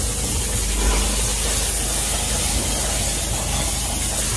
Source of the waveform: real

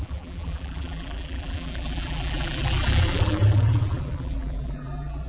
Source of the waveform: fake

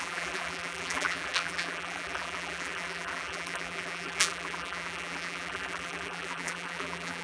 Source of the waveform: fake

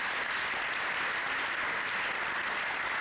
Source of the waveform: real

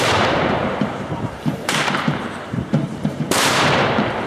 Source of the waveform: fake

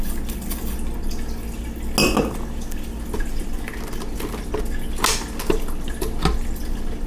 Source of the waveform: real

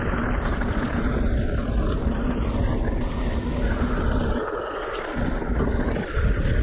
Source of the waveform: real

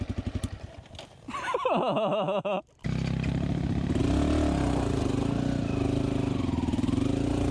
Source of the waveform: real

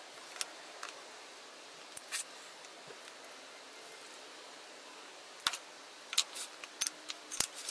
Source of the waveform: real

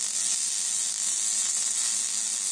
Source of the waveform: real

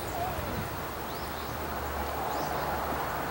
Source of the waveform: real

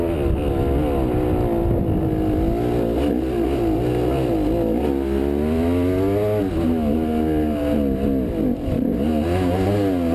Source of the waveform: real